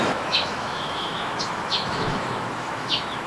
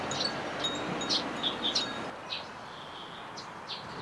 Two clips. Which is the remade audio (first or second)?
first